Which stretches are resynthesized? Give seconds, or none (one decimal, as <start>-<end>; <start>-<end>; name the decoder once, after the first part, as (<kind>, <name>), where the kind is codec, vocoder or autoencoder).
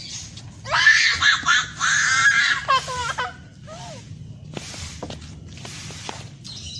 none